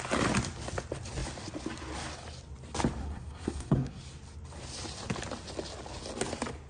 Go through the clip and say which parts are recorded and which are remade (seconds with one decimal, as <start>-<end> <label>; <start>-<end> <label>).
0.0-3.0 recorded; 3.0-4.0 remade; 4.0-6.7 recorded